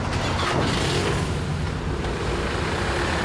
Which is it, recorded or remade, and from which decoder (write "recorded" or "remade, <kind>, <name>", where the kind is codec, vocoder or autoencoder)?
recorded